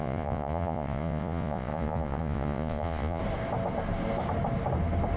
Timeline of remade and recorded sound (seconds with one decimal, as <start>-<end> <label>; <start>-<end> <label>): 0.0-3.2 remade; 3.2-5.2 recorded